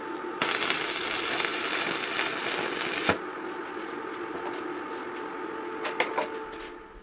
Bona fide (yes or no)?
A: yes